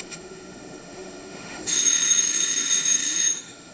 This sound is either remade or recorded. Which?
remade